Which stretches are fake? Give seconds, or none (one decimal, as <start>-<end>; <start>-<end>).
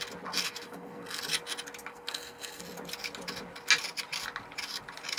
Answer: 0.4-1.2; 1.9-2.6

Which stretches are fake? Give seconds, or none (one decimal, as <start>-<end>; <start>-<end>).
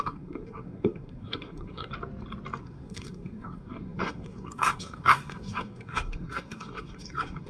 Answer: 0.0-1.9; 2.6-7.5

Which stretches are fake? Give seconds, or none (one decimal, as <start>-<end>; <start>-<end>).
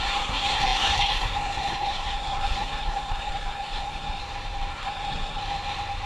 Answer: 0.0-4.2; 4.7-5.4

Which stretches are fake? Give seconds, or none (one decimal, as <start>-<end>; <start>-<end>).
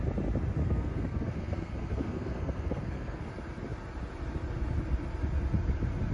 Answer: 0.6-3.3